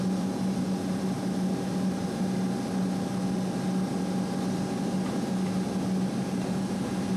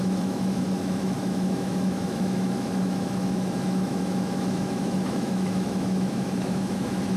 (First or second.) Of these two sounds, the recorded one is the first